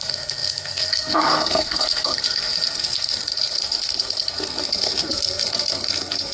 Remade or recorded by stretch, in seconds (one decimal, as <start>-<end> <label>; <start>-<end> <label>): 0.0-6.3 remade